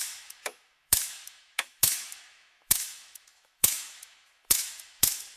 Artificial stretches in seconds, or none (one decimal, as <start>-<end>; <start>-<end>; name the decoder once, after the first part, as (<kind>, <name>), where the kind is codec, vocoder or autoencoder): 0.0-5.4 (autoencoder, DAC-VAE)